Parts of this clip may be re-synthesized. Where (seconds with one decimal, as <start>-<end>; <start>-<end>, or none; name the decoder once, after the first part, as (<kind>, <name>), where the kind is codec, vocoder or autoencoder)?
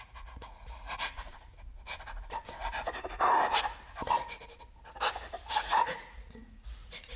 0.0-1.7 (vocoder, Vocos); 5.5-7.2